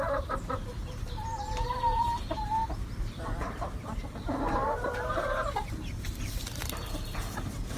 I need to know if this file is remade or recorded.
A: remade